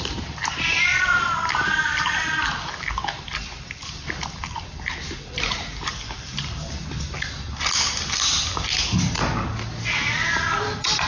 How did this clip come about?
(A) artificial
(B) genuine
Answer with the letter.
B